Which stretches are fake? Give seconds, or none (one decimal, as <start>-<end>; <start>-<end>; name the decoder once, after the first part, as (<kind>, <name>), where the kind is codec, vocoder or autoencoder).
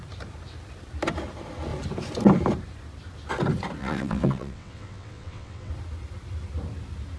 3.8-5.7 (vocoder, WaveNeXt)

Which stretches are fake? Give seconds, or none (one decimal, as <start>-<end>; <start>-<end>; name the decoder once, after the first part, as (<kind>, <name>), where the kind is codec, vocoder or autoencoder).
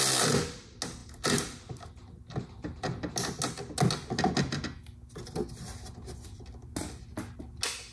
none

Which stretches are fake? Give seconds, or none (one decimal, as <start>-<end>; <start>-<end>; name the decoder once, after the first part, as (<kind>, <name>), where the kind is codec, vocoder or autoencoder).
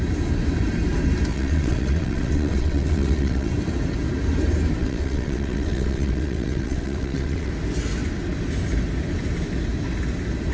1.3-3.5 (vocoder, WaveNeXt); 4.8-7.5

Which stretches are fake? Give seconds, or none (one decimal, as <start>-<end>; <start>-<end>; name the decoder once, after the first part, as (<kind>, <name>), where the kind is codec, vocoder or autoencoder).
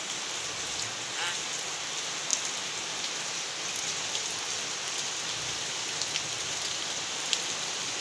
none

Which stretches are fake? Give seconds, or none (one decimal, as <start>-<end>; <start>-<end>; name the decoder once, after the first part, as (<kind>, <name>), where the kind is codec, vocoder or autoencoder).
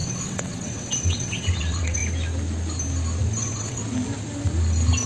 0.0-2.0 (vocoder, WaveNeXt); 3.4-3.8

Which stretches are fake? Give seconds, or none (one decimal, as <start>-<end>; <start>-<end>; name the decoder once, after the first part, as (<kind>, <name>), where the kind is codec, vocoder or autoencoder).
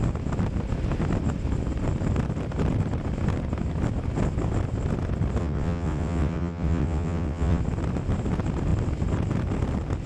5.4-7.6 (vocoder, WaveNeXt)